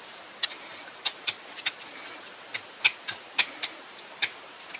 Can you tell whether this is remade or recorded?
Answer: recorded